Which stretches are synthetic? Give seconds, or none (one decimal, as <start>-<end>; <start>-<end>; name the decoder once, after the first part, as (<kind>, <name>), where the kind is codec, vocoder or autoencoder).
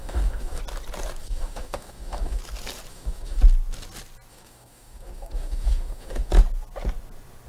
0.0-0.6 (codec, DAC); 1.2-2.4; 2.9-3.4; 4.3-6.3